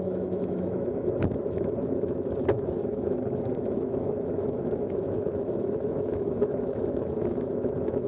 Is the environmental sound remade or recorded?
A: remade